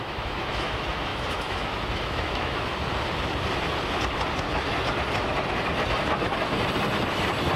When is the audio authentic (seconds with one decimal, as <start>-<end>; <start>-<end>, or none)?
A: 2.7-7.6